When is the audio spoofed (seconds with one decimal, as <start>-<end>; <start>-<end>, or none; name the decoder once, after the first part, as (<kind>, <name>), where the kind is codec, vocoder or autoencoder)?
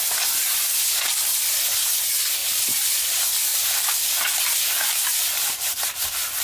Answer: 2.4-3.1 (vocoder, BigVGAN v2); 3.5-6.4